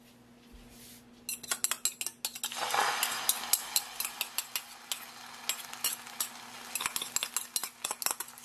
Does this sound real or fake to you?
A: real